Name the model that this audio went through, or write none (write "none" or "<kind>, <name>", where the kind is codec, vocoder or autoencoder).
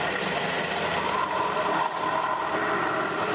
none